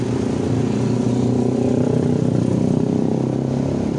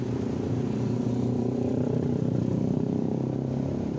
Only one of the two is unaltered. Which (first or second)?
first